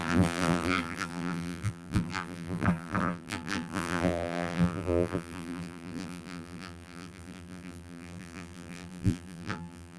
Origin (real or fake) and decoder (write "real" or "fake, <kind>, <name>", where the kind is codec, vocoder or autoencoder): fake, vocoder, BigVGAN v2